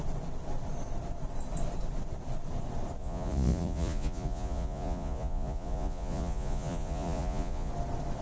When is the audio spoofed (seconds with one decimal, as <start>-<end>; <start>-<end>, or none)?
3.0-7.7